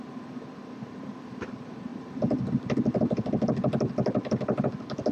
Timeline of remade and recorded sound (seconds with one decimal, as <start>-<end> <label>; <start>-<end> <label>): 0.0-5.1 remade